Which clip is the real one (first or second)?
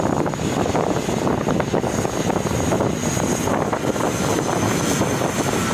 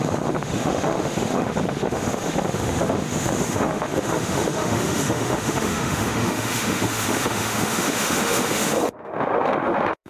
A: first